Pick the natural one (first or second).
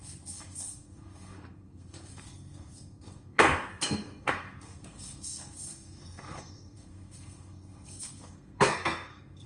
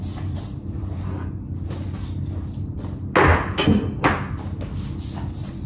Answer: second